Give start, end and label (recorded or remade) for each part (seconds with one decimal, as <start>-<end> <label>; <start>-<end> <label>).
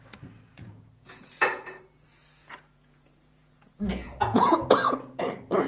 0.0-0.5 recorded; 0.5-1.8 remade; 1.8-2.4 recorded; 2.4-5.2 remade; 5.2-5.7 recorded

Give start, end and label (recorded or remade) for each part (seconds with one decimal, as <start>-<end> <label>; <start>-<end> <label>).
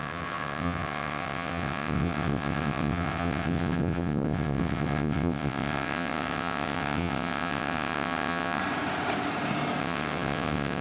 0.0-8.6 remade; 8.6-9.8 recorded; 9.8-10.8 remade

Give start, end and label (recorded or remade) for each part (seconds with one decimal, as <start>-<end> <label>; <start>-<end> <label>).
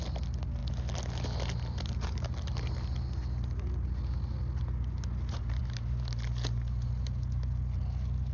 0.0-8.3 recorded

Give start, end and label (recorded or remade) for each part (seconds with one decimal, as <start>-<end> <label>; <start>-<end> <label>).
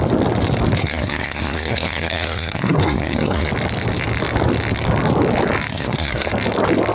0.0-0.8 recorded; 0.8-3.5 remade; 3.5-5.7 recorded; 5.7-6.3 remade; 6.3-6.9 recorded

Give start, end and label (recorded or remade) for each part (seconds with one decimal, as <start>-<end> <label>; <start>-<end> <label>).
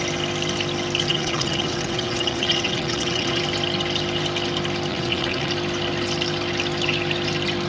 0.0-1.1 recorded; 1.1-3.4 remade; 3.4-4.9 recorded; 4.9-5.5 remade; 5.5-7.7 recorded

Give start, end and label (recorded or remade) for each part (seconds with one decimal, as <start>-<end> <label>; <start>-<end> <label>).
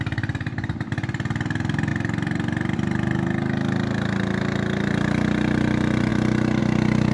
0.0-7.1 recorded